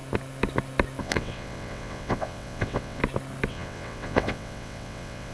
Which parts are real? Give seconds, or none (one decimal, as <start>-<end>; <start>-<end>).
0.0-1.0; 3.0-3.5